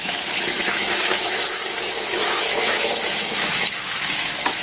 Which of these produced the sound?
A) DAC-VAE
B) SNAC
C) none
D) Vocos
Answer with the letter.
A